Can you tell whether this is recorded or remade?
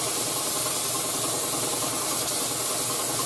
recorded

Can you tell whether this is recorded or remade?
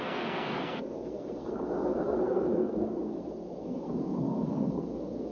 remade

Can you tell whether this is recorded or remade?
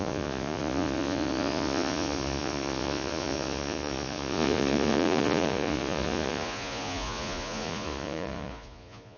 remade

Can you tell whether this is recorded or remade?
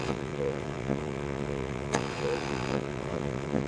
remade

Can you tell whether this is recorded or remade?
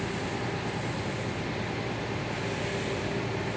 recorded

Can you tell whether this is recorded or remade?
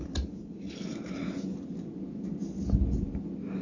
recorded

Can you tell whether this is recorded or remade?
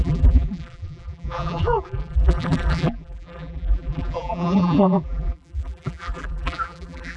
remade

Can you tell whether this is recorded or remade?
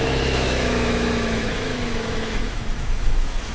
remade